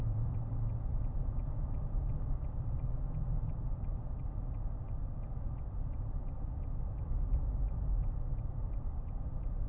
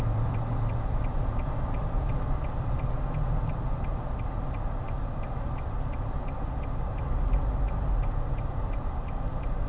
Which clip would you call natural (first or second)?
second